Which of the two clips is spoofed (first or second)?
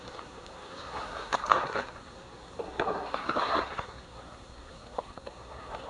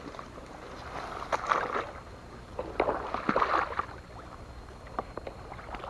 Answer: first